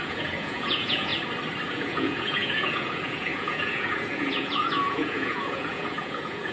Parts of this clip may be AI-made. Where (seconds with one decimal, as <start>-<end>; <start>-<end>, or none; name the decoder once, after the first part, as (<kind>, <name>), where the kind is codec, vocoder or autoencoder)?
0.0-1.1 (vocoder, Vocos); 1.7-6.5